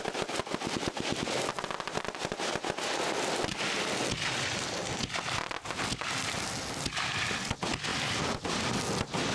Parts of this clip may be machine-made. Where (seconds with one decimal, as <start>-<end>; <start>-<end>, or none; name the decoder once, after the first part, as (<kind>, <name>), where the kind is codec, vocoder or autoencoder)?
7.9-8.7 (vocoder, BigVGAN v2)